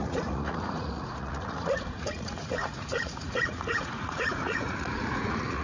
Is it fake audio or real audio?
fake